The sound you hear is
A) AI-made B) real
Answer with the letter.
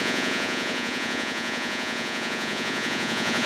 A